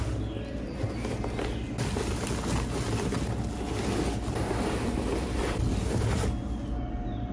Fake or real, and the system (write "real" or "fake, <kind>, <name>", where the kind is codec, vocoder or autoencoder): real